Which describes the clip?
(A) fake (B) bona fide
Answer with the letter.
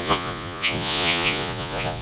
A